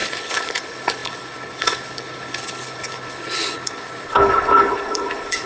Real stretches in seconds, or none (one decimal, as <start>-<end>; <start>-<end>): none